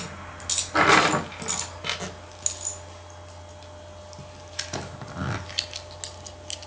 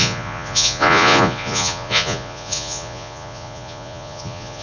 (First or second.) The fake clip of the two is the second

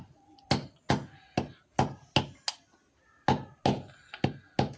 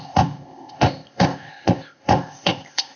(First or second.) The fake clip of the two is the second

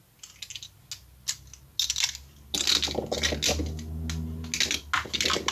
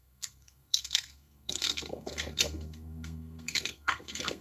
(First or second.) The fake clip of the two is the second